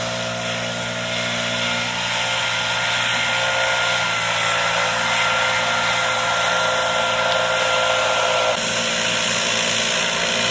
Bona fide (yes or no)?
yes